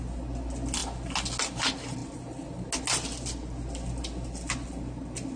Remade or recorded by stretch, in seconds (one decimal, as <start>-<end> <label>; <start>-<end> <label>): 0.0-5.4 recorded